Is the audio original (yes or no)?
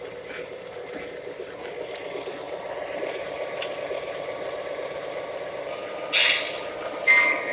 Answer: yes